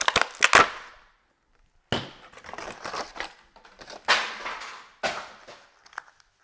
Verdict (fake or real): real